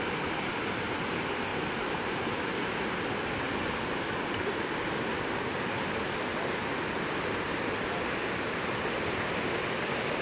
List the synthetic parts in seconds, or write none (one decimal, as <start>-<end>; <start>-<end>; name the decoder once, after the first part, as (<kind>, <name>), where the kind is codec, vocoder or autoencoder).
1.5-3.0 (vocoder, BigVGAN v2)